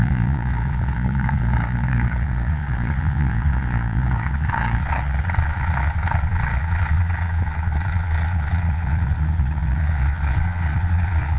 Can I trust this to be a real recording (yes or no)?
no